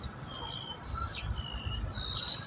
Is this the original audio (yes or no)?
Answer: no